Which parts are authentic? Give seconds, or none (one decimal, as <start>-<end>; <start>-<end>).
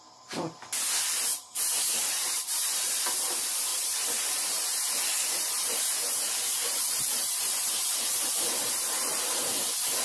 0.0-1.3; 2.9-3.7; 7.5-9.1; 9.6-10.0